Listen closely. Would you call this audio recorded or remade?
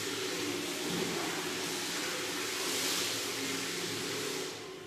recorded